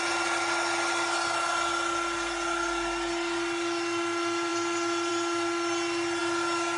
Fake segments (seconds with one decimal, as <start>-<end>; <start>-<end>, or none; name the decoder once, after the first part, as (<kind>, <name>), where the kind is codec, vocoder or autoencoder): none